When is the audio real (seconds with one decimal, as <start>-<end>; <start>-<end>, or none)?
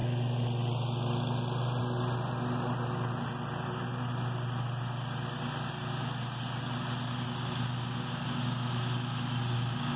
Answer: 0.0-10.0